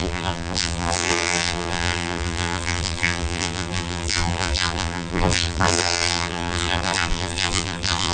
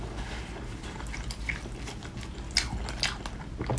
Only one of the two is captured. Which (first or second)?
second